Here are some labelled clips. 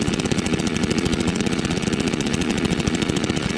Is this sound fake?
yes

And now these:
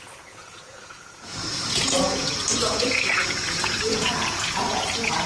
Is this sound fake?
yes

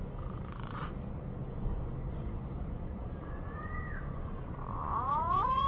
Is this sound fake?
yes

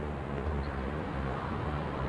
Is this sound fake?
yes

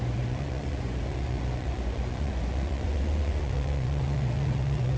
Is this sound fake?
yes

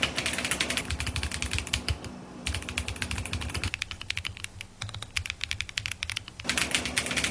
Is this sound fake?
no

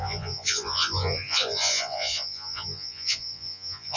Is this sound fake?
yes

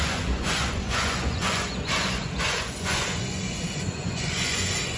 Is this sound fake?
yes